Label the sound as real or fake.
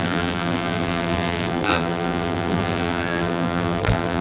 fake